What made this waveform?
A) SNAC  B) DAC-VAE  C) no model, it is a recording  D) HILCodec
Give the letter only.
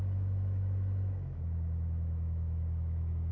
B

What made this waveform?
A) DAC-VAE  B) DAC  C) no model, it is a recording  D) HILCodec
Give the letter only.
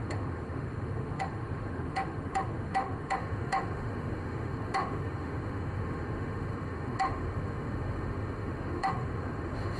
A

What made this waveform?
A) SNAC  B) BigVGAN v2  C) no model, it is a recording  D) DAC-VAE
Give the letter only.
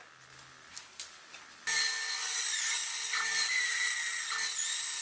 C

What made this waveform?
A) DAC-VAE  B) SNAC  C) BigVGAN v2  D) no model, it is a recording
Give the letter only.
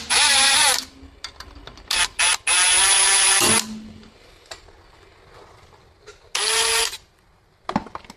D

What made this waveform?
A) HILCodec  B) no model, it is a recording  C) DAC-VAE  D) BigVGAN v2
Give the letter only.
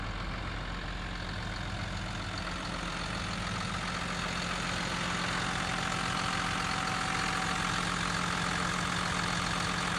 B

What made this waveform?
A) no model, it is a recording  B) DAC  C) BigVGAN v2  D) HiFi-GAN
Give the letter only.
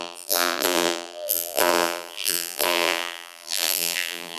C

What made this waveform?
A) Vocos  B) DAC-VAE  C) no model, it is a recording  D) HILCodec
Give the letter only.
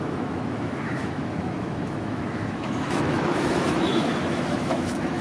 B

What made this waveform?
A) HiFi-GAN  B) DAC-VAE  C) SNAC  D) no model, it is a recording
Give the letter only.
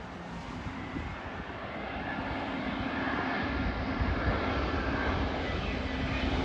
D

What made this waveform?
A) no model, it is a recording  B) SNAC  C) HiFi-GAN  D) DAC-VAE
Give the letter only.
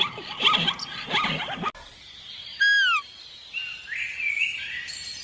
A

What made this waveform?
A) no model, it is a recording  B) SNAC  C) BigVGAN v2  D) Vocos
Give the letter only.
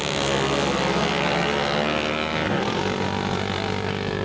A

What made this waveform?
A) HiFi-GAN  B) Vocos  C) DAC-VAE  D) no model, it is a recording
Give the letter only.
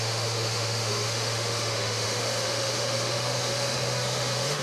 C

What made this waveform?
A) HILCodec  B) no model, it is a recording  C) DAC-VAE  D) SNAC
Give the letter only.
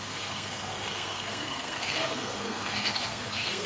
D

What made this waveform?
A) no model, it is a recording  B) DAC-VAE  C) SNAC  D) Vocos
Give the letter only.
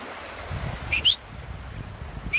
A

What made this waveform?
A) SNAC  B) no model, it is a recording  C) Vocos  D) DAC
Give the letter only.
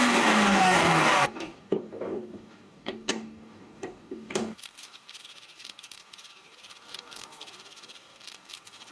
D